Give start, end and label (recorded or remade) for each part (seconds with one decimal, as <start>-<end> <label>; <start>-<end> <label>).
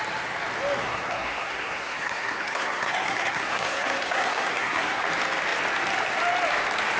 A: 0.0-0.8 recorded; 0.8-5.0 remade; 5.0-7.0 recorded